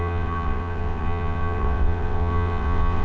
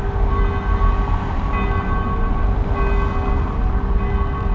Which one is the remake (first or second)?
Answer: first